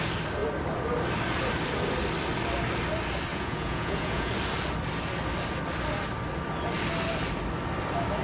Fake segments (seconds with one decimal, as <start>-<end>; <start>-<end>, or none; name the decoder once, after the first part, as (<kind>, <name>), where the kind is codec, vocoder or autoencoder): 3.3-4.3 (vocoder, Vocos)